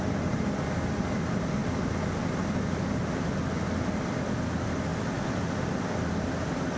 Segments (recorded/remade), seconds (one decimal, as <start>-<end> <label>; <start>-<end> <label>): 0.0-4.9 recorded; 4.9-6.3 remade; 6.3-6.8 recorded

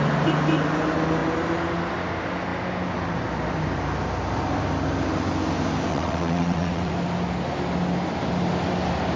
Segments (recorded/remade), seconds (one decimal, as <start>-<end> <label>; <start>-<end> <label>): 0.0-5.9 recorded; 5.9-6.9 remade; 6.9-9.2 recorded

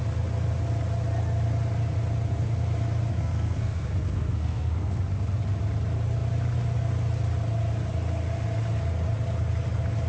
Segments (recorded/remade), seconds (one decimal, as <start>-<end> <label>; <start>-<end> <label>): 0.0-3.1 recorded; 3.1-5.0 remade; 5.0-10.1 recorded

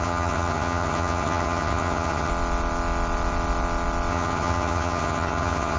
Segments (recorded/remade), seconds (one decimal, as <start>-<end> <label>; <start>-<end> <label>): 0.0-2.3 remade; 2.3-4.1 recorded; 4.1-5.8 remade